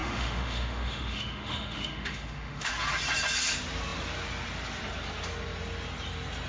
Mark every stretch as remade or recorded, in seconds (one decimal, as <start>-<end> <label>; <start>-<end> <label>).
0.0-2.7 remade; 2.7-6.5 recorded